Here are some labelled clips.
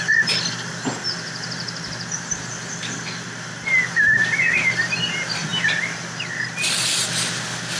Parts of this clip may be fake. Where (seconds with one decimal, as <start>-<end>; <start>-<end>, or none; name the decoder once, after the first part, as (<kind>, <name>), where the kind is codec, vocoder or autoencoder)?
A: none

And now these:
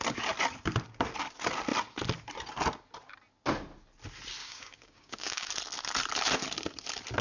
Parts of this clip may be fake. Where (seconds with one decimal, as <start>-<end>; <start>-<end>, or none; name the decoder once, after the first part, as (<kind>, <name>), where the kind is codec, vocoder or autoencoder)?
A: 4.4-5.5 (codec, DAC)

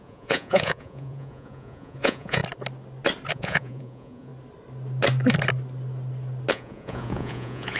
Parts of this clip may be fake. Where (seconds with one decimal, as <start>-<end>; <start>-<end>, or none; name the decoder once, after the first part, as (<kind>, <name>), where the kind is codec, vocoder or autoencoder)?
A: 0.0-2.4 (vocoder, Vocos); 3.3-4.3; 6.5-7.8